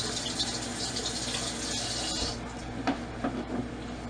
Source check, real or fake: real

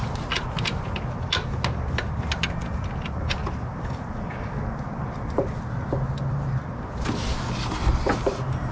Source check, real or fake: real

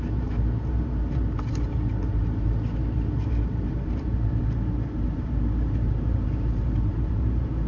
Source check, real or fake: fake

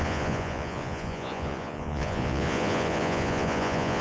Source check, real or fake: fake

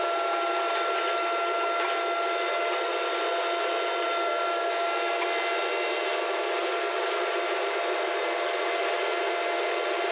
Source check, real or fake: real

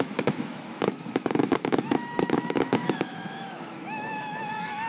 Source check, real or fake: fake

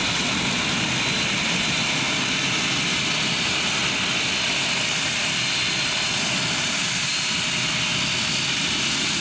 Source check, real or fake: real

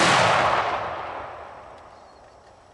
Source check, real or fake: real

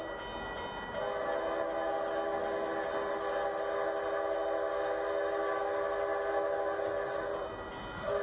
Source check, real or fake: real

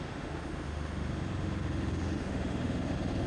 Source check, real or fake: fake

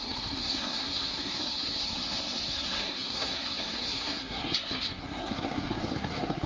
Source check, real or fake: fake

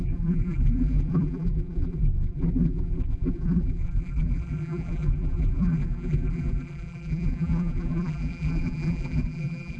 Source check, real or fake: fake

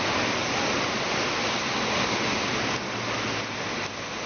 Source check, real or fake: real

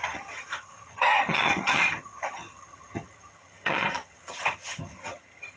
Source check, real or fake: fake